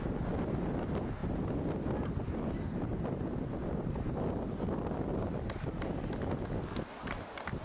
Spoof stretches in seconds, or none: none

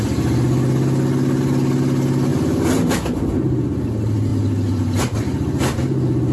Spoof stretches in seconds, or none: none

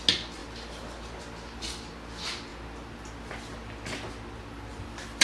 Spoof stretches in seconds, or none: none

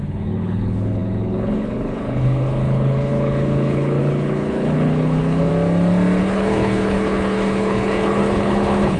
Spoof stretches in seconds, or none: 0.0-5.5 (codec, HILCodec); 6.2-9.0